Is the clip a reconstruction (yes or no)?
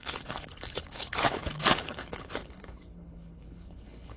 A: yes